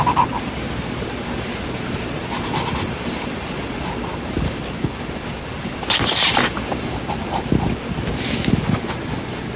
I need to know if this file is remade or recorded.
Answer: recorded